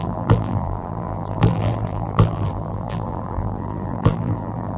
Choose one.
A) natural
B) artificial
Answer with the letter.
B